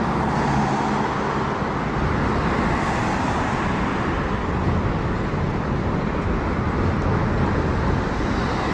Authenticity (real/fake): real